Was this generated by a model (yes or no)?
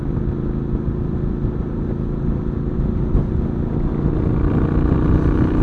no